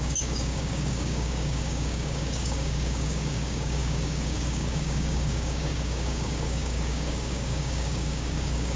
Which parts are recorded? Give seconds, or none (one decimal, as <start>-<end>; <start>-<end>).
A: none